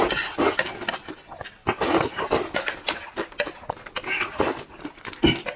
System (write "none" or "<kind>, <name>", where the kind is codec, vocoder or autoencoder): none